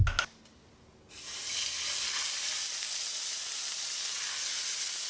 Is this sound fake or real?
real